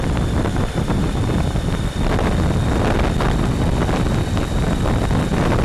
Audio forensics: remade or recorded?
recorded